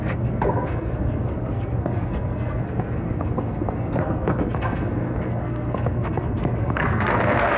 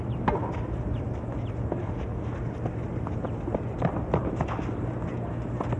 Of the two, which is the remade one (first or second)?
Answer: first